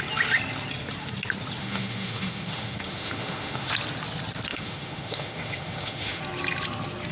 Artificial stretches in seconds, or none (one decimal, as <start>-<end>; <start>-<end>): 1.6-3.7; 4.5-6.2